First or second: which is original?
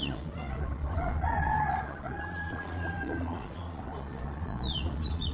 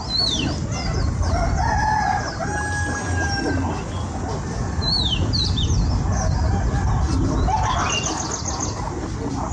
second